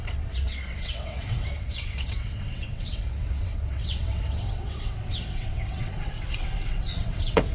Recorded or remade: remade